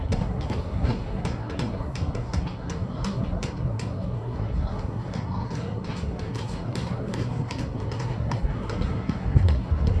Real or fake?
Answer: fake